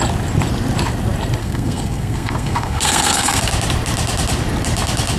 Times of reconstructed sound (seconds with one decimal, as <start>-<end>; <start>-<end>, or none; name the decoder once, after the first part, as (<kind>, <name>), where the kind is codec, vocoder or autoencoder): 1.4-3.4 (codec, SNAC)